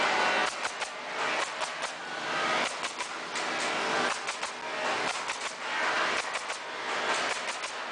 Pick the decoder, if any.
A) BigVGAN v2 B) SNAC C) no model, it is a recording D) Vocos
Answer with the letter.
C